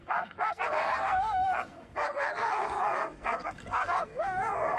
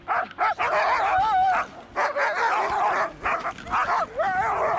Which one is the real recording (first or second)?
second